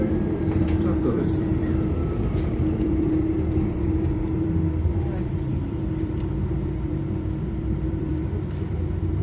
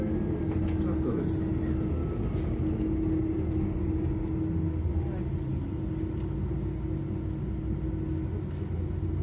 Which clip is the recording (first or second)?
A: second